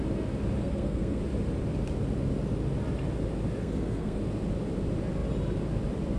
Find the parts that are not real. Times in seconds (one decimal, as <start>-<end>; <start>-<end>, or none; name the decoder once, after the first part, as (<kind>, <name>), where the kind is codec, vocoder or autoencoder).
0.6-1.2 (codec, SNAC); 3.6-4.2

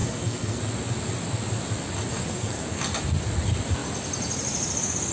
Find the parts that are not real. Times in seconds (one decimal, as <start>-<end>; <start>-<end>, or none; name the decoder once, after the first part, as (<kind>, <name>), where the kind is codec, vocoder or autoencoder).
0.0-0.6 (codec, SNAC); 2.1-2.8